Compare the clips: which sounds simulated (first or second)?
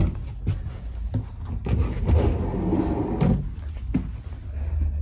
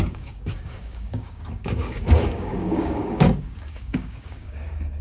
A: second